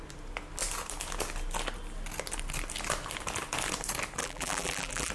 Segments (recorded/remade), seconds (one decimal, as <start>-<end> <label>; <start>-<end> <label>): 0.0-4.2 recorded; 4.2-5.1 remade